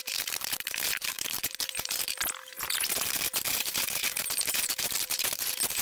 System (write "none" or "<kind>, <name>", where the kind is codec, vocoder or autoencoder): vocoder, BigVGAN v2